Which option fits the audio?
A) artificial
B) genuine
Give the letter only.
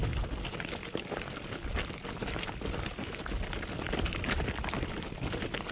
B